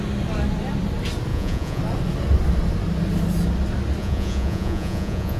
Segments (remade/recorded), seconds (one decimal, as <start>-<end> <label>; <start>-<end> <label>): 0.0-1.3 recorded; 1.3-1.8 remade; 1.8-4.0 recorded; 4.0-5.4 remade